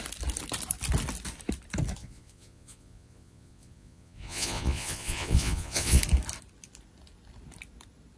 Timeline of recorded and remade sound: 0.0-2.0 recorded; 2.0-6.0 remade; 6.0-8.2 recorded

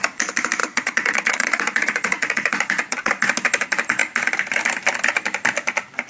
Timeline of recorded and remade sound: 0.0-0.6 recorded; 0.6-3.1 remade; 3.1-6.1 recorded